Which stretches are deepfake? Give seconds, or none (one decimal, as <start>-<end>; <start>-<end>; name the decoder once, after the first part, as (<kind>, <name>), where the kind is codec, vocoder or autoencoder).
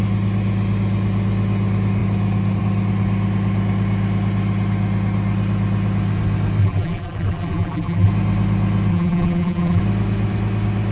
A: 6.6-8.1 (vocoder, BigVGAN v2); 8.9-9.8